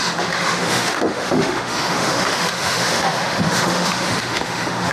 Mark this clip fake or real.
fake